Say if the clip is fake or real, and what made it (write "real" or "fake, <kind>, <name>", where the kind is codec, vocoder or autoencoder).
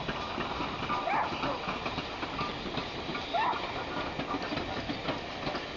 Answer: real